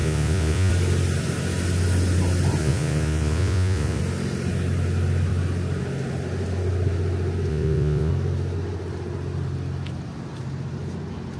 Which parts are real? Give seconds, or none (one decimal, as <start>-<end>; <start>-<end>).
0.7-2.6; 4.0-7.5; 8.1-11.4